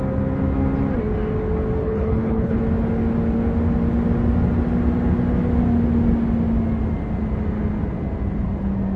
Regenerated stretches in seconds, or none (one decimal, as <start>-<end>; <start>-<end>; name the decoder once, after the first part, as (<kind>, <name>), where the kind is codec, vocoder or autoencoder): 1.8-2.6 (codec, HILCodec)